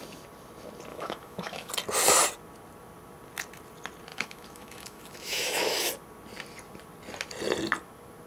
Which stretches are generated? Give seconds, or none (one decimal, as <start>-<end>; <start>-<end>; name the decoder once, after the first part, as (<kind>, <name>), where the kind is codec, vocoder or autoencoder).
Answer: 0.9-1.7 (autoencoder, DAC-VAE); 4.1-5.9